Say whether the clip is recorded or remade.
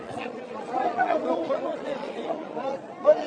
remade